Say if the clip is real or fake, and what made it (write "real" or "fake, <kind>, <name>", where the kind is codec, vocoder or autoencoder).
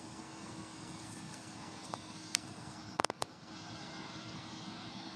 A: fake, codec, SNAC